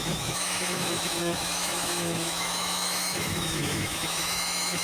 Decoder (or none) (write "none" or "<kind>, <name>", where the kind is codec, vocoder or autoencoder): autoencoder, DAC-VAE